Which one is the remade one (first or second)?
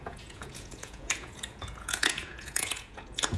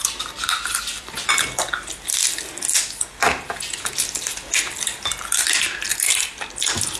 first